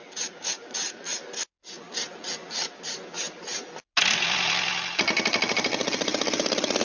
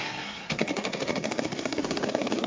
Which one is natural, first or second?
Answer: first